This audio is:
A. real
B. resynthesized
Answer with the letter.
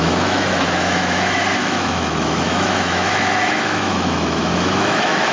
B